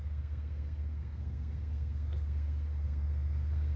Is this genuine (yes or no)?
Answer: no